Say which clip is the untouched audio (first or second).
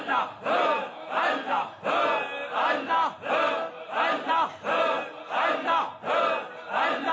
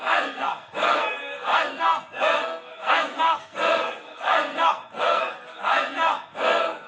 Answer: first